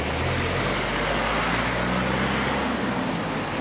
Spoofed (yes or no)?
no